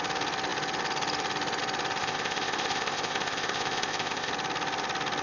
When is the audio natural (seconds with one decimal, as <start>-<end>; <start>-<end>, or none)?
0.0-2.0; 4.3-5.2